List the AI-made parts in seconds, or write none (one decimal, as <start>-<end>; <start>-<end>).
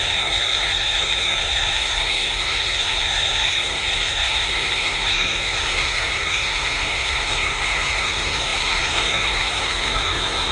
0.0-10.5